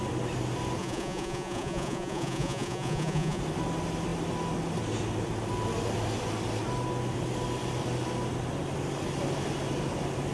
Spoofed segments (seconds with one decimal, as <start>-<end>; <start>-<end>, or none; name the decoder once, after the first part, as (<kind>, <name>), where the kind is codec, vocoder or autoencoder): 0.8-3.4 (vocoder, Vocos)